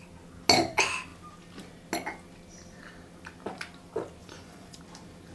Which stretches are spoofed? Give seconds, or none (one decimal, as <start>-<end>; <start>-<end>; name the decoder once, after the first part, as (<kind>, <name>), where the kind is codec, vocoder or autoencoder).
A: 4.2-4.8 (vocoder, Vocos)

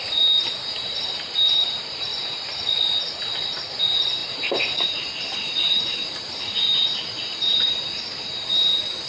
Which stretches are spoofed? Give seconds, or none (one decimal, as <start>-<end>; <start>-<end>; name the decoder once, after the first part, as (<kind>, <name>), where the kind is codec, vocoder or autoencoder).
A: 0.0-2.1 (vocoder, BigVGAN v2); 3.7-9.1

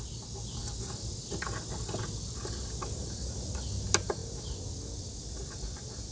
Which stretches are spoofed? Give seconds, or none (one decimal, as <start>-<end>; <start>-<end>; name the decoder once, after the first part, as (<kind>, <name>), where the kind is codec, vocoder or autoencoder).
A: none

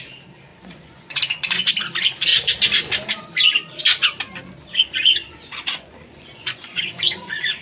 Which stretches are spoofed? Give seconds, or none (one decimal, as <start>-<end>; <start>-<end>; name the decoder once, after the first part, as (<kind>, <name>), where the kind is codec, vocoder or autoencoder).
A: 0.5-1.7 (vocoder, Vocos); 4.6-7.6

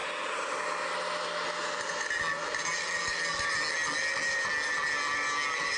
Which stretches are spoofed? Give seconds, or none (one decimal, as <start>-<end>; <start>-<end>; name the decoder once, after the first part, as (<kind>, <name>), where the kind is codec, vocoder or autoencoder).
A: none

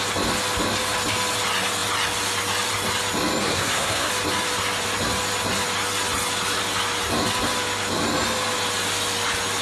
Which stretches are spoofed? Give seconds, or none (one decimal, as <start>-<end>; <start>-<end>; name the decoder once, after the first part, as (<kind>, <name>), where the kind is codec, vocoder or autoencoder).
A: 3.4-4.1 (codec, SNAC)

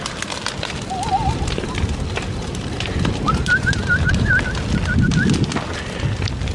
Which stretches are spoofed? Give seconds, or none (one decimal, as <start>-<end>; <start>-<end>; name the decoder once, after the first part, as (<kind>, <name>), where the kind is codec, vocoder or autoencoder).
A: 1.1-1.8 (vocoder, BigVGAN v2); 2.3-4.3

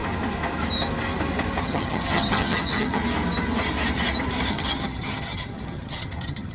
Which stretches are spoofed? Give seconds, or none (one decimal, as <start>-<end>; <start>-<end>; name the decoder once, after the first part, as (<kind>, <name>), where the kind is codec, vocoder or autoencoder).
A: 1.6-3.0 (vocoder, HiFi-GAN); 4.5-6.5